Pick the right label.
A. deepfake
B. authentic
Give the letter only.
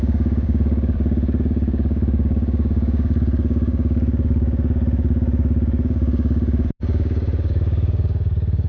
A